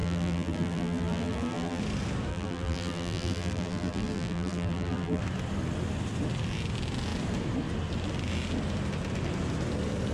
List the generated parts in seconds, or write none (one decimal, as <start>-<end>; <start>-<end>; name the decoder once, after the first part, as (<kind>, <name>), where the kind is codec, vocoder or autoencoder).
0.0-1.8 (vocoder, BigVGAN v2); 2.3-5.2

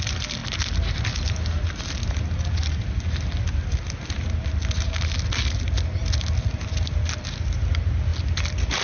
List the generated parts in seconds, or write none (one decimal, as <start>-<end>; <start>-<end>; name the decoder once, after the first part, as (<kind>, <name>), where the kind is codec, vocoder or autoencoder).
none